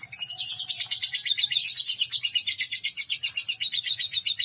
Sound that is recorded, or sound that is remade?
recorded